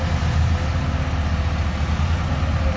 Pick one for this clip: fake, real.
real